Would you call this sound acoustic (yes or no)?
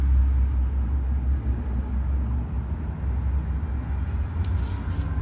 yes